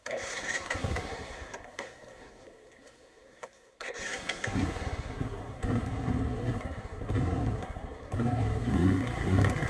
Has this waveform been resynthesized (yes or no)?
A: yes